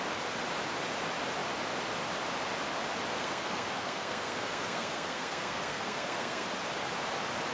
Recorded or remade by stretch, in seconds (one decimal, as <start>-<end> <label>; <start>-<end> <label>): 0.0-3.1 recorded; 3.1-6.5 remade; 6.5-7.5 recorded